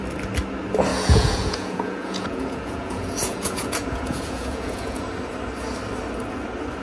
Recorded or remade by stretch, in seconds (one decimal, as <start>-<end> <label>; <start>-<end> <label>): 0.0-0.9 recorded; 0.9-5.0 remade; 5.0-6.8 recorded